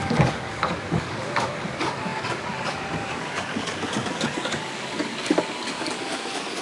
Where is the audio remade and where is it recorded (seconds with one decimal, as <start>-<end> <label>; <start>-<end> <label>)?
0.0-6.6 remade